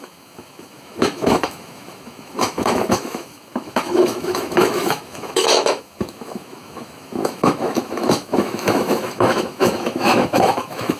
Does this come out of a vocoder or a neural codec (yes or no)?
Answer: yes